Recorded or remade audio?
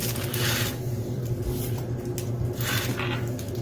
recorded